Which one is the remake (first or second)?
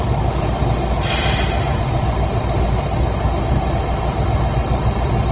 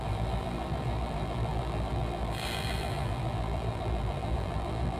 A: second